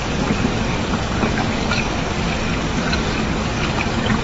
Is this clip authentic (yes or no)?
no